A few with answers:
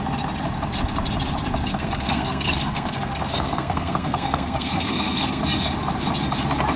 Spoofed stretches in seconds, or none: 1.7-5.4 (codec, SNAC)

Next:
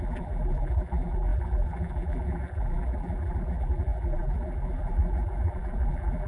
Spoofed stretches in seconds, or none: 0.0-6.3 (vocoder, BigVGAN v2)

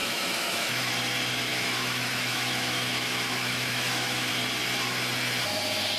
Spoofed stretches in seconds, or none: 0.0-0.9 (autoencoder, DAC-VAE); 1.5-4.3

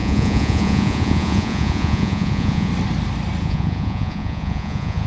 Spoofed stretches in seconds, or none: 0.0-2.7 (vocoder, Vocos); 3.4-5.1

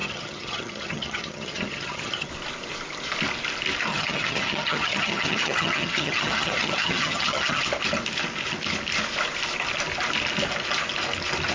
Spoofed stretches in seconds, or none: 0.0-2.3 (vocoder, HiFi-GAN); 3.9-7.6

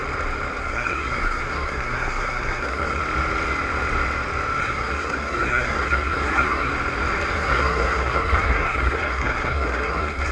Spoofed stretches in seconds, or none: 0.6-3.0 (codec, SNAC); 4.6-6.7; 7.3-10.3

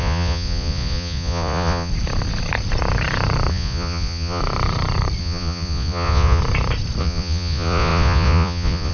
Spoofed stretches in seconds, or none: 0.0-1.9 (vocoder, Vocos); 3.5-4.4; 5.2-6.4; 7.0-8.9

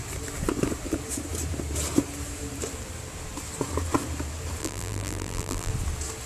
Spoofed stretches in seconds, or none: 4.6-5.7 (vocoder, BigVGAN v2)